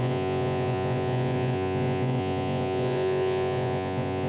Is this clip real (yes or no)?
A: no